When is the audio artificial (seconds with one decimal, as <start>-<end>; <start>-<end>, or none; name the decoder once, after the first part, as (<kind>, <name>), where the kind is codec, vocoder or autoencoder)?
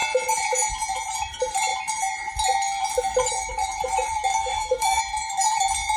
4.3-5.0 (codec, DAC)